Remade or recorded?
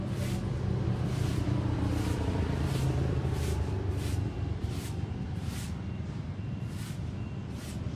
remade